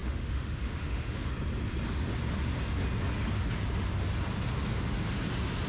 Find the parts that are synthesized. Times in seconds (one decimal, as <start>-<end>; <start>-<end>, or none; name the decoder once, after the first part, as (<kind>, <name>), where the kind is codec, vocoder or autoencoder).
0.0-1.3 (autoencoder, DAC-VAE)